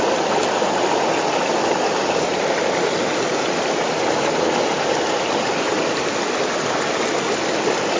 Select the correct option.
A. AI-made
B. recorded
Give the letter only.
B